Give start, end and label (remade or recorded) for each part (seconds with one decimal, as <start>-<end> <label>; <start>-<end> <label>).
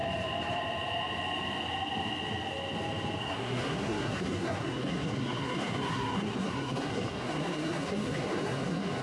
0.0-3.2 recorded; 3.2-9.0 remade